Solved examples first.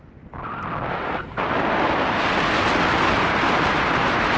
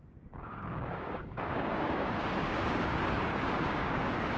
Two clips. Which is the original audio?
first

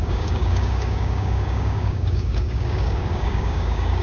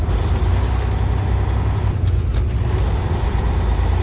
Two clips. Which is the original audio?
second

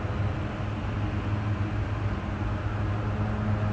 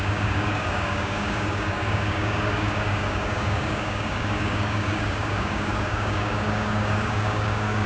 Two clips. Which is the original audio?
first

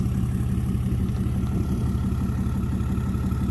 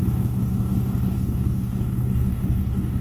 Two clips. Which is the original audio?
first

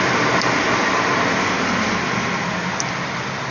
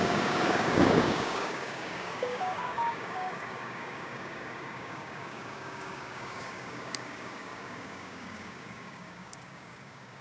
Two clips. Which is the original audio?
first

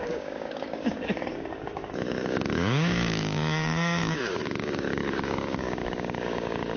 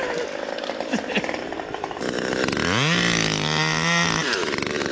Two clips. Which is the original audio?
second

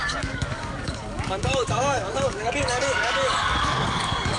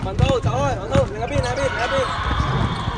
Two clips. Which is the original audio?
second